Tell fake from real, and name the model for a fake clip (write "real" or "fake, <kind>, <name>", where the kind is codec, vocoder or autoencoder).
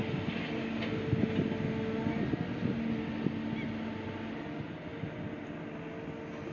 real